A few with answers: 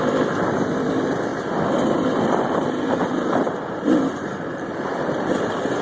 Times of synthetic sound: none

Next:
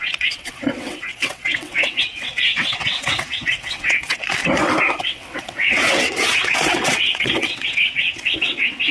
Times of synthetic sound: 0.0-4.4 (vocoder, WaveNeXt); 5.0-8.9

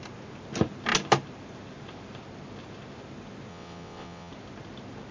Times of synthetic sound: 3.5-4.3 (vocoder, WaveNeXt)

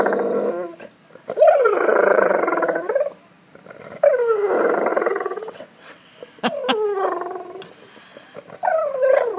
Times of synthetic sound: 1.6-2.4 (vocoder, WaveNeXt); 4.9-6.1

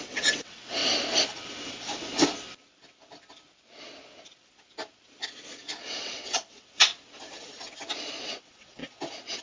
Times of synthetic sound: 0.0-0.8 (vocoder, WaveNeXt); 5.9-6.9; 8.2-8.8

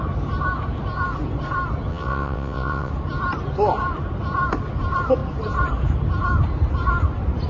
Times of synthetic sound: 1.9-2.9 (vocoder, WaveNeXt)

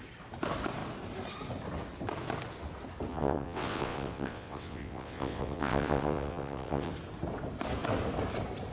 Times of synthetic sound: 3.1-6.9 (vocoder, WaveNeXt)

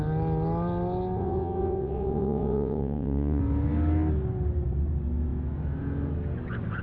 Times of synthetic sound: 1.2-3.4 (vocoder, WaveNeXt)